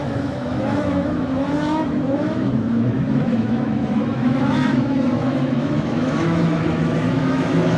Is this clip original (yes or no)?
no